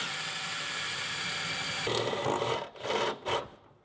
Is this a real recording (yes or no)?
yes